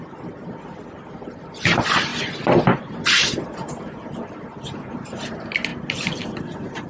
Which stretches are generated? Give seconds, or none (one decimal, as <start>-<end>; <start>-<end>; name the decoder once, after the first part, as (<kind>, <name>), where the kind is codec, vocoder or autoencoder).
none